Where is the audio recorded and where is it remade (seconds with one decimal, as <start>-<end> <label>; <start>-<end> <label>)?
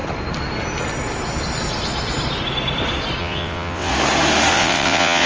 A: 0.0-3.2 recorded; 3.2-3.9 remade; 3.9-4.5 recorded; 4.5-5.3 remade